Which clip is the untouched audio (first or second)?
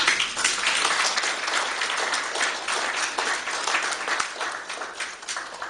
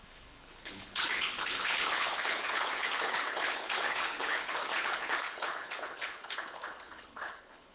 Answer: first